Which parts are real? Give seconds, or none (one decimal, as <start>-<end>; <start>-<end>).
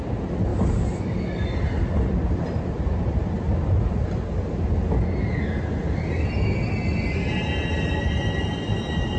0.0-9.2